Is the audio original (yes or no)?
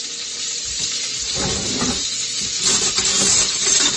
yes